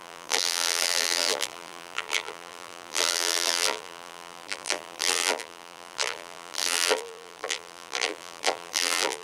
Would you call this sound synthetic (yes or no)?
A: yes